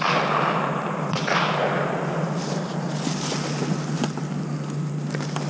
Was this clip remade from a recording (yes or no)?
no